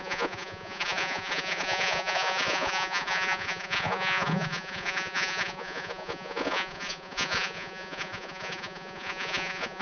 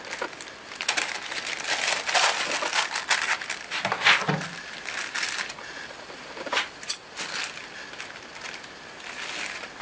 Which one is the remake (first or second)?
first